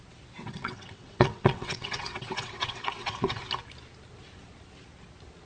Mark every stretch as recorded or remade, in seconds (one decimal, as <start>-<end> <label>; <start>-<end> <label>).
0.0-0.4 recorded; 0.4-3.4 remade; 3.4-5.5 recorded